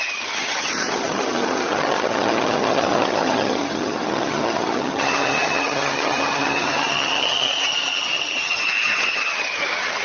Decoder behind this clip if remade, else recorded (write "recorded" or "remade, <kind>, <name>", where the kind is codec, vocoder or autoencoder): remade, vocoder, HiFi-GAN